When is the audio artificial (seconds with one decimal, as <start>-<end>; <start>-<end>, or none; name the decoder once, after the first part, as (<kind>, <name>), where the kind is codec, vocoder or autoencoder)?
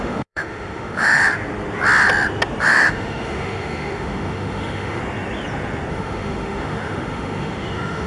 0.0-1.2 (autoencoder, DAC-VAE); 2.6-5.0; 5.9-8.1